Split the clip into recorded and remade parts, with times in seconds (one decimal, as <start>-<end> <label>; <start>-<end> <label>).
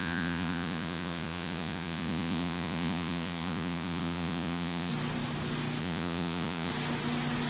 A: 0.0-4.9 remade; 4.9-5.8 recorded; 5.8-6.7 remade; 6.7-7.5 recorded